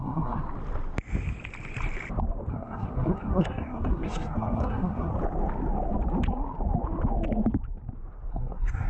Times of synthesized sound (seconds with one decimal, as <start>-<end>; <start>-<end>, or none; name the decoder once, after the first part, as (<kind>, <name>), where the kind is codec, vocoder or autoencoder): 0.0-0.4 (codec, SNAC); 2.5-5.1; 8.3-8.9